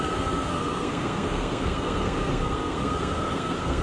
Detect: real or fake fake